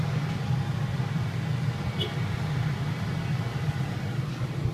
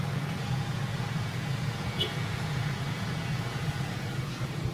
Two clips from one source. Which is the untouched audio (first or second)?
first